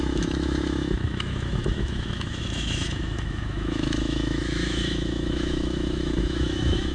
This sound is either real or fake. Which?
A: fake